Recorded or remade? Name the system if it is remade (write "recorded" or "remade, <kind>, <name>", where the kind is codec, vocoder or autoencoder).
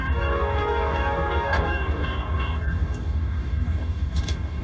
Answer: remade, codec, DAC